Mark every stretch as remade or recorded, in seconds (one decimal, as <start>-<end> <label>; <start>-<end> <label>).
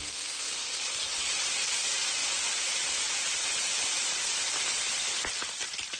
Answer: 0.0-0.8 remade; 0.8-6.0 recorded